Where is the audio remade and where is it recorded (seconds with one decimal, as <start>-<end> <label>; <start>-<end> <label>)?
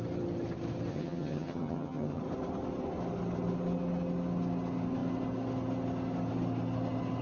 0.0-0.9 recorded; 0.9-2.2 remade; 2.2-7.2 recorded